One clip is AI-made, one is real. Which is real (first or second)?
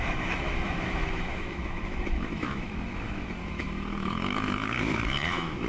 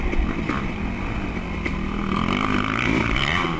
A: second